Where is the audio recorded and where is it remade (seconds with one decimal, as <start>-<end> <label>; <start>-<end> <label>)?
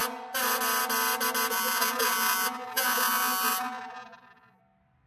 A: 0.0-1.5 recorded; 1.5-4.6 remade; 4.6-5.1 recorded